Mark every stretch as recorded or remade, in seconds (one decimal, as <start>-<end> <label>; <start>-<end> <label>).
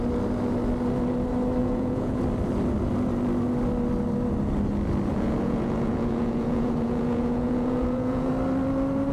0.0-1.6 recorded; 1.6-2.2 remade; 2.2-5.1 recorded; 5.1-8.3 remade; 8.3-9.1 recorded